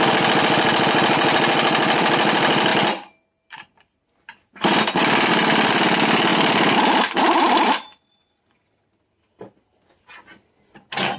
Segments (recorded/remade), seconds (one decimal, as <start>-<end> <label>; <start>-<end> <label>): 0.0-11.2 recorded